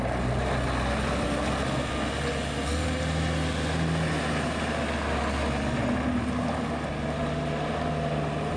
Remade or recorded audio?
recorded